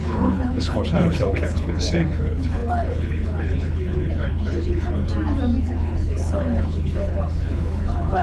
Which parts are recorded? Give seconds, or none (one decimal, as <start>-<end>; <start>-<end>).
5.1-5.6